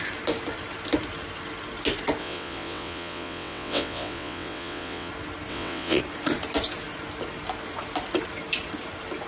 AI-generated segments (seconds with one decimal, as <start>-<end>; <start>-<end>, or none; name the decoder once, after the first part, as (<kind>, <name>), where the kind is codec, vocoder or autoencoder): 2.2-5.1 (vocoder, WaveNeXt); 5.5-6.0